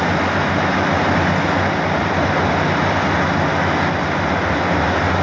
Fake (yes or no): no